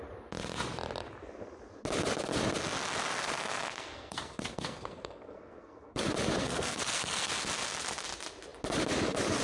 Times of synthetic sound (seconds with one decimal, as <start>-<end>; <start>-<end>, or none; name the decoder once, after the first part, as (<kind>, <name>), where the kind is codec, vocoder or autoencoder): 3.2-6.0 (codec, SNAC); 6.4-7.3